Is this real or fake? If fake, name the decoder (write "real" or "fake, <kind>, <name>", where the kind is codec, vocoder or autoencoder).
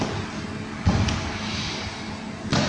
real